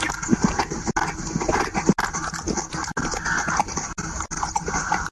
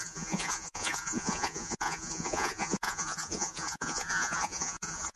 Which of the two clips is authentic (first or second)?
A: first